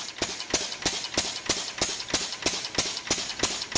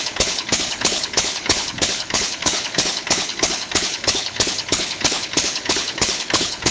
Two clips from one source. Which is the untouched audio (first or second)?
first